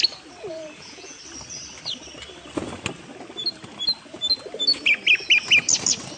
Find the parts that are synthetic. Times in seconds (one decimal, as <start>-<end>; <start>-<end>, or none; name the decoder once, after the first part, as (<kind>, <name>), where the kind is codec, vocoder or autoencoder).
0.5-1.2 (vocoder, Vocos)